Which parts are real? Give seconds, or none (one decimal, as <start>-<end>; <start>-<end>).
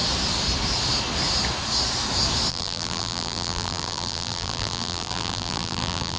0.0-2.5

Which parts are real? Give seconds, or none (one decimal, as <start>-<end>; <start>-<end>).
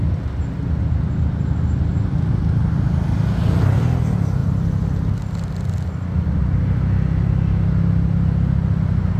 0.0-9.2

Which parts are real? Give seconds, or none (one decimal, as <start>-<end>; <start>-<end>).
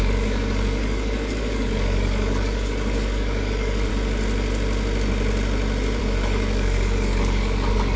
3.9-6.0